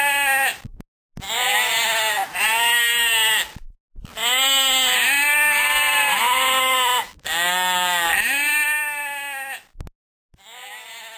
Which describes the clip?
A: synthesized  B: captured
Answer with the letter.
B